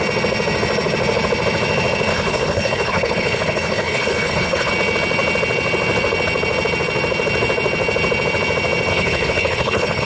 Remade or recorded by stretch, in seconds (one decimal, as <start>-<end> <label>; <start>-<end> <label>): 0.0-2.1 recorded; 2.1-4.7 remade; 4.7-8.9 recorded; 8.9-10.0 remade